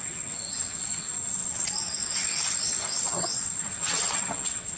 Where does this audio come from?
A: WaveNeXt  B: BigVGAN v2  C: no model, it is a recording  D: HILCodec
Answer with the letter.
A